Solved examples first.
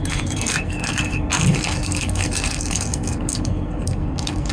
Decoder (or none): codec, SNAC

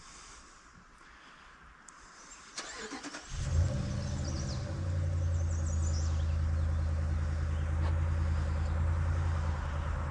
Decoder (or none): none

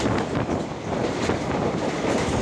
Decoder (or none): none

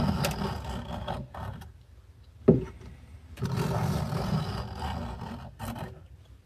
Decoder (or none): none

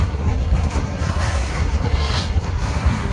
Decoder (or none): codec, SNAC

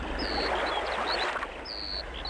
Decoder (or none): none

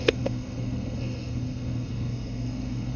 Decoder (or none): codec, SNAC